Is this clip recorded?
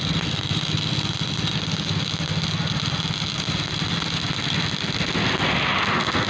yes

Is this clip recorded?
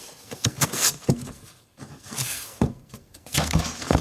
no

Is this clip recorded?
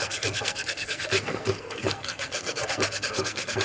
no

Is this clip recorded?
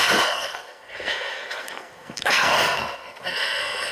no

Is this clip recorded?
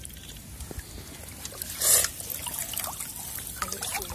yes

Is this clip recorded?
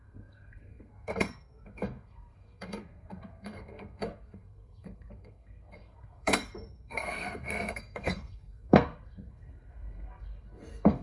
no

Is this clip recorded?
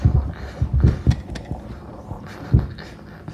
yes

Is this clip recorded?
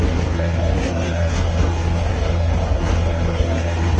no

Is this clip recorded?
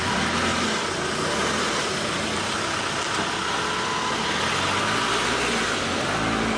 yes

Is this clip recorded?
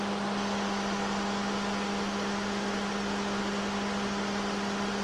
yes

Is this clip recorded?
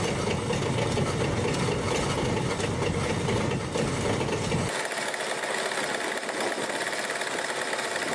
yes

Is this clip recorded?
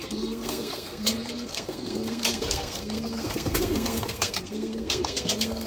no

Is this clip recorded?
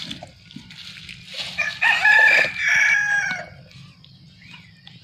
yes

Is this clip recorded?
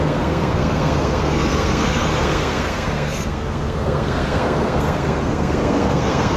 no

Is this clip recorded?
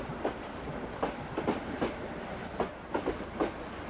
yes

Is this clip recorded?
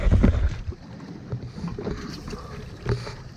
yes